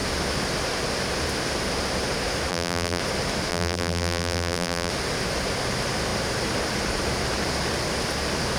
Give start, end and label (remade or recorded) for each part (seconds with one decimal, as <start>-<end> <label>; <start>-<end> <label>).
0.0-2.5 recorded; 2.5-3.0 remade; 3.0-3.5 recorded; 3.5-4.9 remade; 4.9-8.6 recorded